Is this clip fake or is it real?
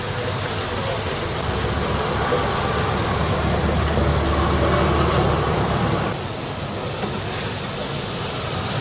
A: real